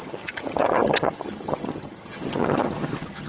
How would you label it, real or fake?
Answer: fake